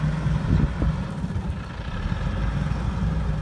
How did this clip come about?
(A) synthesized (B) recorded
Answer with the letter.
B